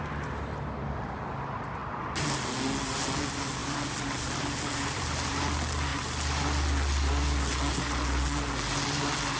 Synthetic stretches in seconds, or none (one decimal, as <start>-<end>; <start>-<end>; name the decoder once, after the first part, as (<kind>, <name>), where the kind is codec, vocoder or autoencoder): 3.6-5.4 (vocoder, BigVGAN v2)